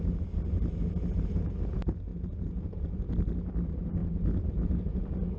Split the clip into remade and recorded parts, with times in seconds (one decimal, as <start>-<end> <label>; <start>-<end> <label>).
0.0-2.1 recorded; 2.1-3.0 remade; 3.0-4.0 recorded; 4.0-5.0 remade; 5.0-5.4 recorded